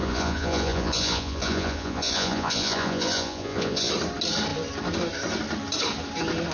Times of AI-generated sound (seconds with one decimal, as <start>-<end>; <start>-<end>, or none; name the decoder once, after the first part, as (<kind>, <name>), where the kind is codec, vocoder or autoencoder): 0.0-3.9 (vocoder, Vocos)